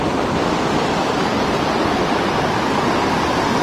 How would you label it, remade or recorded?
recorded